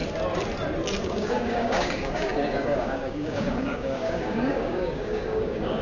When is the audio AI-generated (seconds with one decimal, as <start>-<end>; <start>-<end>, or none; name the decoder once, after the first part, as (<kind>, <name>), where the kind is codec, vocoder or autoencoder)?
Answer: 1.0-5.8 (codec, DAC)